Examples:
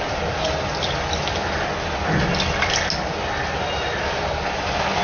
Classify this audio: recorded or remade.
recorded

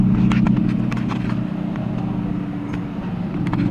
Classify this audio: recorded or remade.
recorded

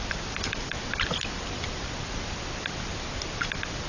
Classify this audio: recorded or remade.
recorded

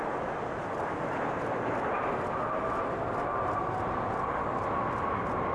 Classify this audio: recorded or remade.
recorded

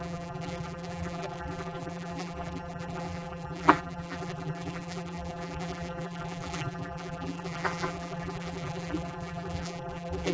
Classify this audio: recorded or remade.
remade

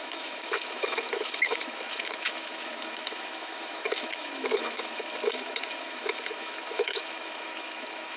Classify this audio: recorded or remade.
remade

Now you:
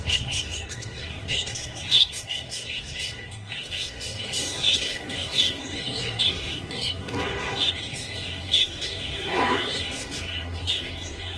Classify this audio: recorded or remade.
remade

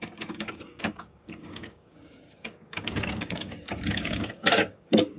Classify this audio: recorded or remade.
remade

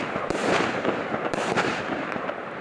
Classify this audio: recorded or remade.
remade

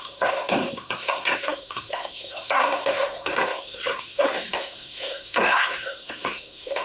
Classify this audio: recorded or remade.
remade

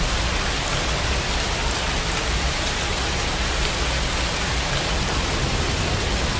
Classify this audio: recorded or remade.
recorded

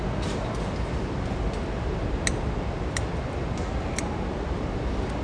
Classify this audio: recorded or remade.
recorded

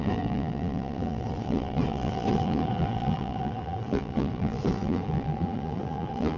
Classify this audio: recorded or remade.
remade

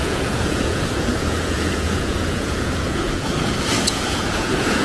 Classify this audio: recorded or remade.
remade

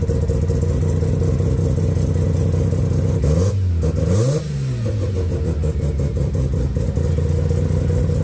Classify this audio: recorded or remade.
recorded